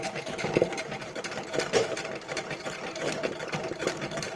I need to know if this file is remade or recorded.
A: remade